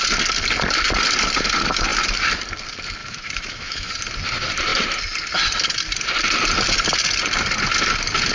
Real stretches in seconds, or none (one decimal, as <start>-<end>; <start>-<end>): 0.0-3.0; 3.9-8.3